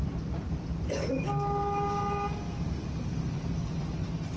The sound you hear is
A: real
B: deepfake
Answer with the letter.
A